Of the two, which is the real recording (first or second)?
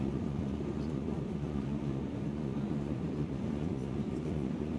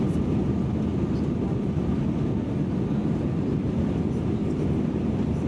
second